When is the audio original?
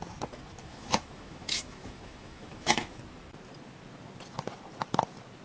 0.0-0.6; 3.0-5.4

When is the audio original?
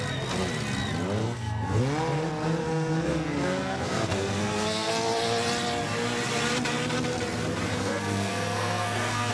0.0-1.2; 1.8-2.6; 4.9-7.7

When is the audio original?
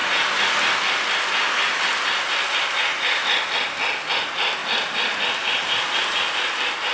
0.0-6.9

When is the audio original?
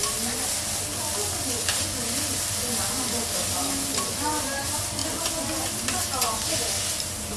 0.0-4.4; 5.0-6.9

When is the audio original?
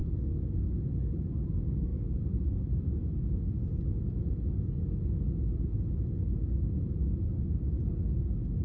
0.0-1.9; 4.7-7.3; 7.9-8.6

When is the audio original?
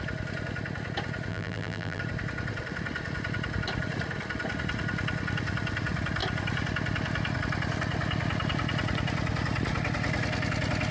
0.0-1.3; 2.0-10.9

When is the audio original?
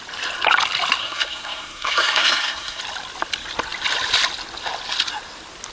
0.0-1.0; 2.8-5.7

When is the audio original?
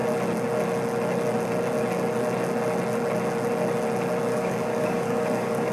0.0-4.3